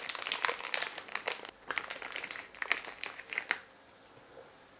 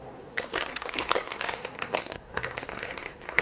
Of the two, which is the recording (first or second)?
first